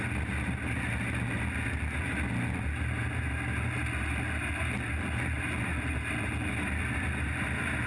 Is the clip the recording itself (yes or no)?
yes